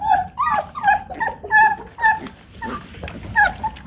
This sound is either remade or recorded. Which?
recorded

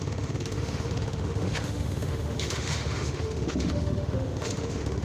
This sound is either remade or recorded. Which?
remade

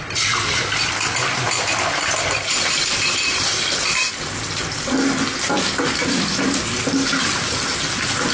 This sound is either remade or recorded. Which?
recorded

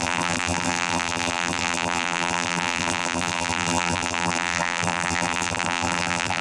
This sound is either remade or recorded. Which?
remade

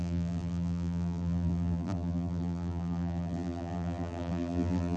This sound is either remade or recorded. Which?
remade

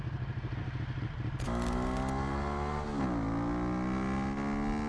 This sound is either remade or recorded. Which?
recorded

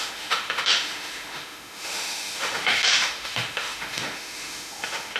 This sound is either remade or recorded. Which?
remade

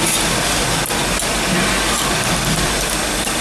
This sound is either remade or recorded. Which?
recorded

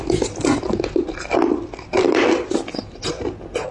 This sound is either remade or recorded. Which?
recorded